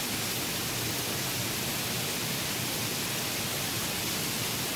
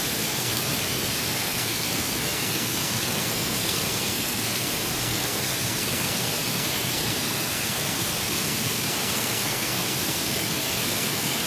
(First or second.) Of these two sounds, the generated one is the second